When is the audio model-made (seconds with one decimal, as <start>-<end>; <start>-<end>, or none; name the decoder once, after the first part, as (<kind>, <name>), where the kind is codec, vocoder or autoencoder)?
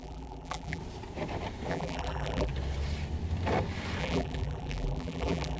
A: 0.0-0.8 (vocoder, BigVGAN v2); 1.7-2.5; 4.0-5.6